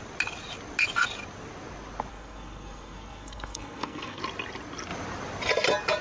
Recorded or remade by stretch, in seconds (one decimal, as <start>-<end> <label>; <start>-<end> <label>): 0.0-2.1 recorded; 2.1-4.2 remade; 4.2-6.0 recorded